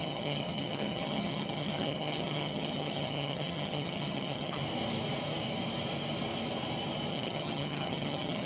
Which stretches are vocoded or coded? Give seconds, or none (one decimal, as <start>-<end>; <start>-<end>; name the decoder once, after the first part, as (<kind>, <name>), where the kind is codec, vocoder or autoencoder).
0.0-4.6 (vocoder, HiFi-GAN); 7.1-8.5